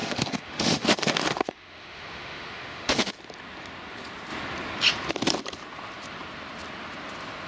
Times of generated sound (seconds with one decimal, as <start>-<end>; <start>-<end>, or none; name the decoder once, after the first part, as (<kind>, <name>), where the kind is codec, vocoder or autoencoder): 0.0-3.1 (autoencoder, DAC-VAE)